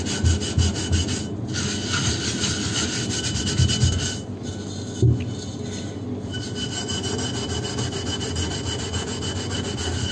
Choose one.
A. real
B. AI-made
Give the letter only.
A